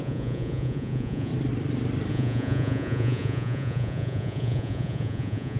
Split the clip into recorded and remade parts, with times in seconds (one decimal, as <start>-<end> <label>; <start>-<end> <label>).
0.0-1.3 remade; 1.3-2.1 recorded; 2.1-5.6 remade